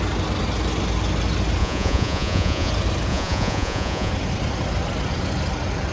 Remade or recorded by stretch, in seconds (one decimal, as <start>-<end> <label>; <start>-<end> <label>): 0.0-1.6 recorded; 1.6-2.7 remade; 2.7-3.1 recorded; 3.1-4.1 remade; 4.1-5.9 recorded